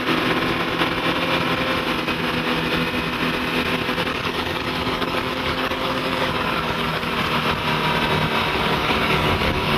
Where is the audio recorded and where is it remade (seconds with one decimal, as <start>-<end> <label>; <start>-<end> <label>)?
0.0-4.1 recorded; 4.1-7.1 remade; 7.1-8.5 recorded; 8.5-9.8 remade